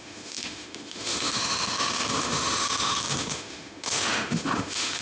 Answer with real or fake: fake